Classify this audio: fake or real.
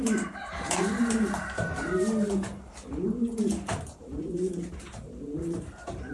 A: fake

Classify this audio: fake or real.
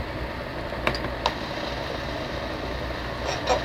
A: real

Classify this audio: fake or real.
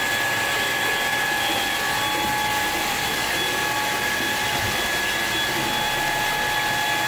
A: real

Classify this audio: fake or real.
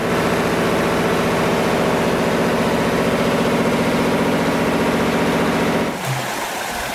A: real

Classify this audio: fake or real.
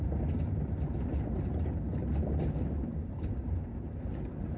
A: fake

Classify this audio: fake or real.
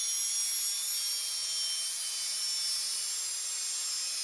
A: real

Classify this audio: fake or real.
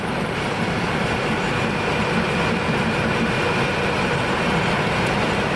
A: real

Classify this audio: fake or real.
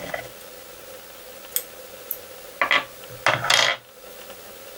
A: real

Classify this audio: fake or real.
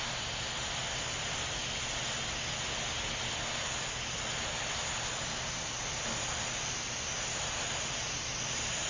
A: real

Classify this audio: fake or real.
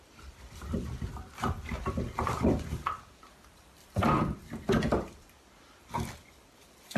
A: fake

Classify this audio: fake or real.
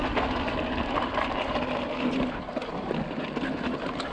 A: real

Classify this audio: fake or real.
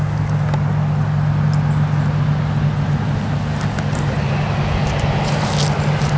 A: real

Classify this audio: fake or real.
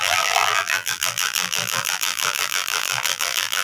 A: fake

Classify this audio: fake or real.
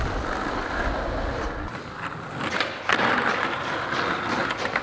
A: real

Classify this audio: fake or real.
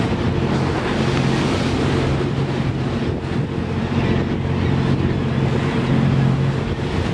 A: real